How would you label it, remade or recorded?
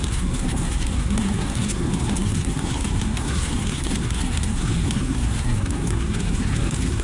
remade